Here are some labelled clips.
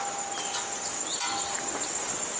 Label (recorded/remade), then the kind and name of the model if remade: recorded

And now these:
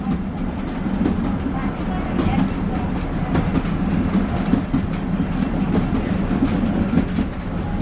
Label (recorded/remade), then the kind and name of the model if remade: recorded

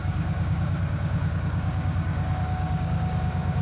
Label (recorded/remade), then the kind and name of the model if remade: remade, codec, DAC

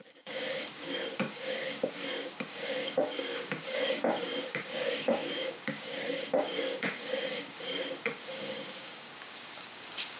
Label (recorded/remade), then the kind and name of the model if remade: remade, codec, DAC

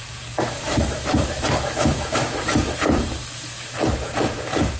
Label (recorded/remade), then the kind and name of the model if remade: remade, codec, DAC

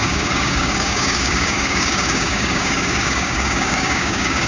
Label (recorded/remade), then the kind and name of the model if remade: remade, codec, DAC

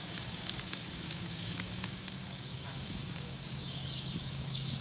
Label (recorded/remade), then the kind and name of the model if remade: remade, codec, DAC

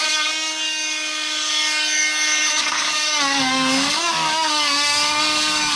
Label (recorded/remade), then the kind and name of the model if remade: remade, codec, DAC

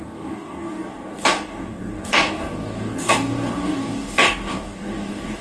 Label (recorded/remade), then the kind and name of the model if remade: remade, codec, DAC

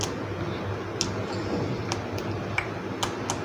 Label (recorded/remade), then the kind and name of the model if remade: recorded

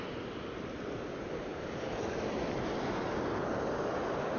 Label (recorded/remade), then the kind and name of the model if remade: recorded